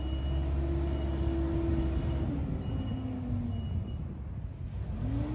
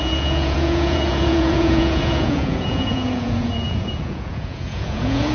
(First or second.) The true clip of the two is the first